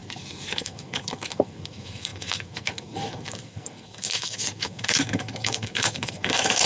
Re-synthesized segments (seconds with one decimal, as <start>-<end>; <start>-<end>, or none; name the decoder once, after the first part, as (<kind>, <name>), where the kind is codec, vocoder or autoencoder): 0.0-6.7 (codec, SNAC)